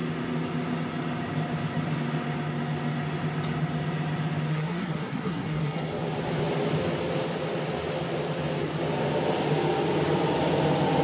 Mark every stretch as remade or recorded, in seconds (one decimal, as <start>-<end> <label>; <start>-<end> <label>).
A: 0.0-4.5 recorded; 4.5-5.9 remade; 5.9-11.0 recorded

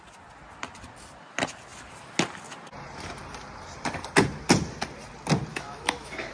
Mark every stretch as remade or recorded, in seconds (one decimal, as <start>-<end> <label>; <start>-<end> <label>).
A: 0.0-5.5 recorded; 5.5-6.3 remade

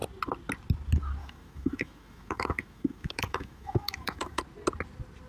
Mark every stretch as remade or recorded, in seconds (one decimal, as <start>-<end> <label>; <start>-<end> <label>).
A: 0.0-1.2 recorded; 1.2-4.4 remade; 4.4-5.3 recorded

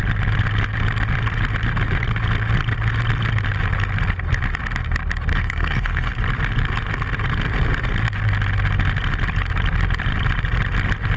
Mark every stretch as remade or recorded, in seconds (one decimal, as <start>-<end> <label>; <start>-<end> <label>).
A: 0.0-5.3 recorded; 5.3-6.1 remade; 6.1-11.2 recorded

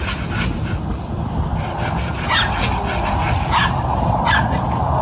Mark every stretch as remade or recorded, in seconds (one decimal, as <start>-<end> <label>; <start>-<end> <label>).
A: 0.0-5.0 recorded

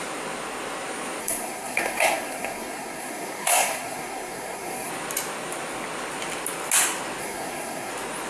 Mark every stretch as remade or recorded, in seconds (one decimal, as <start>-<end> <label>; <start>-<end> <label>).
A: 0.0-1.2 recorded; 1.2-4.9 remade; 4.9-7.2 recorded; 7.2-7.9 remade; 7.9-8.3 recorded

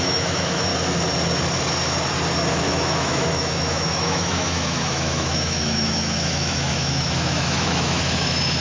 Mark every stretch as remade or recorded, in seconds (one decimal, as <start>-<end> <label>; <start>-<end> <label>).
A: 0.0-0.7 remade; 0.7-2.5 recorded; 2.5-8.6 remade